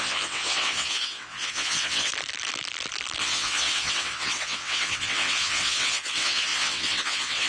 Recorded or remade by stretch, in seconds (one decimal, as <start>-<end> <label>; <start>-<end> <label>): 0.0-2.1 remade; 2.1-3.2 recorded; 3.2-7.5 remade